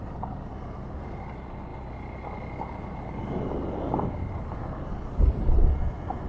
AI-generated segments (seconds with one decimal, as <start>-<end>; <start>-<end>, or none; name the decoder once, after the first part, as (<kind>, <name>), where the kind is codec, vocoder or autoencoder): none